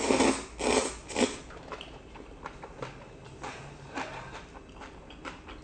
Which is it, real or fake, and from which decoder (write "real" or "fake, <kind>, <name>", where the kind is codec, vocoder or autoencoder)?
real